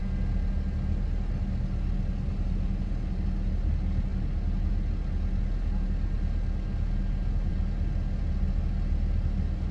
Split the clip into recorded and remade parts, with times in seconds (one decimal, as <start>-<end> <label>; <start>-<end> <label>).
0.0-9.7 recorded

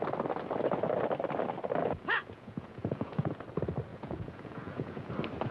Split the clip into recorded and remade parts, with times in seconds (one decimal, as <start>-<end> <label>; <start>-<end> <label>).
0.0-1.8 recorded; 1.8-3.4 remade; 3.4-3.9 recorded; 3.9-5.1 remade; 5.1-5.5 recorded